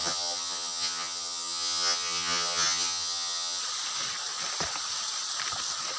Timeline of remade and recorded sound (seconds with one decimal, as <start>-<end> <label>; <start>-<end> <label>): 0.0-3.6 remade; 3.6-6.0 recorded